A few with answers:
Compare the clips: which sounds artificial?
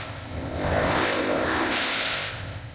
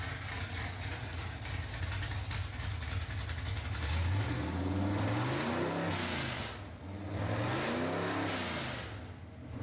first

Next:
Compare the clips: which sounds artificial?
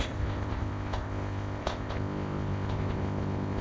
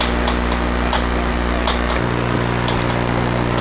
first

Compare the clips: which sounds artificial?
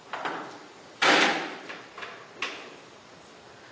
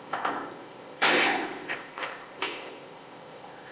second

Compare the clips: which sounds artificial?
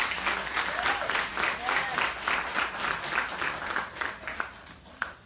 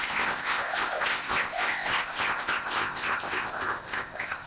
second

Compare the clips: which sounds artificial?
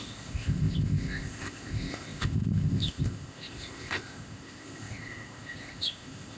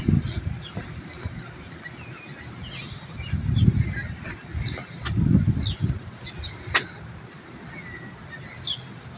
first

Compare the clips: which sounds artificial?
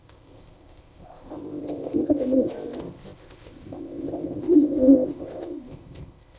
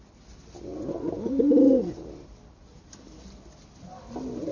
first